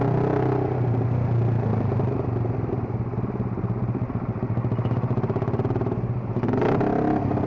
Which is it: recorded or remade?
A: recorded